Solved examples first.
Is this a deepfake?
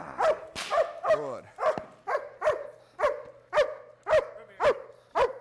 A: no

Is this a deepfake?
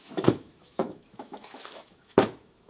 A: yes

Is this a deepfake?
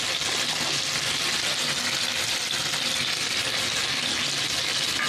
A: no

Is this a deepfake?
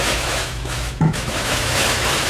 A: yes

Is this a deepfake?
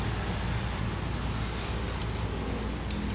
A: no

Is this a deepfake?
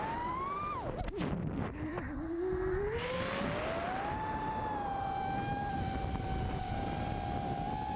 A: no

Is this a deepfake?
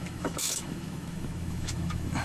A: yes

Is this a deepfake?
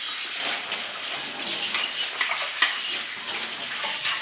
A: no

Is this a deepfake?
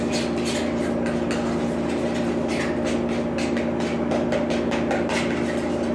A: no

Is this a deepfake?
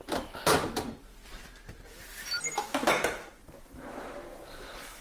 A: no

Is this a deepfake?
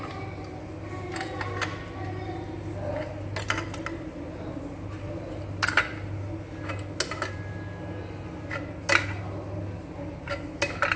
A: no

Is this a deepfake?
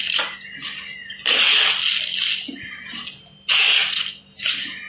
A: no